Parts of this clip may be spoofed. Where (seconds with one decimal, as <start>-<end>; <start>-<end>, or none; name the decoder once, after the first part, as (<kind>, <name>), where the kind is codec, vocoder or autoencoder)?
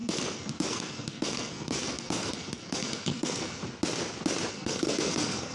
0.0-3.6 (codec, SNAC); 4.5-5.5